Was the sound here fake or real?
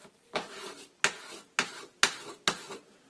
real